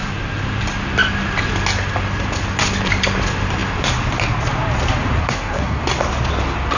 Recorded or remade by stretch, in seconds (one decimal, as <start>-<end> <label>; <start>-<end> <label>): 0.0-5.2 recorded; 5.2-5.8 remade; 5.8-6.8 recorded